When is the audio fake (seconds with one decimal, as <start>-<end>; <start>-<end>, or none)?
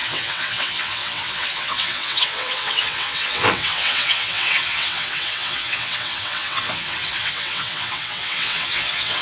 0.0-9.2